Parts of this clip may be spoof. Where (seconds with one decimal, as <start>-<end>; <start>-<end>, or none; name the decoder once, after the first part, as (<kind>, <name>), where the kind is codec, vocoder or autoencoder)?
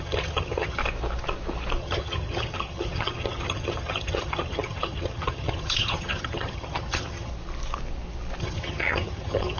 0.0-0.8 (vocoder, HiFi-GAN); 1.8-7.3; 8.4-9.6